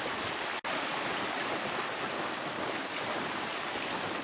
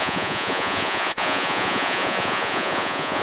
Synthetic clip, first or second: second